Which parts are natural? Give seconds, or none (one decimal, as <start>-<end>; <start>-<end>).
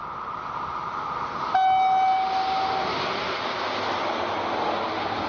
0.0-5.3